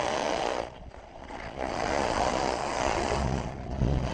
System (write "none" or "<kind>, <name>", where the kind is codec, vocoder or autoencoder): vocoder, Vocos